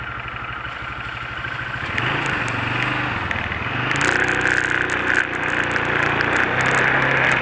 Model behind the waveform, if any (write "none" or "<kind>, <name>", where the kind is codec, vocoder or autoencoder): none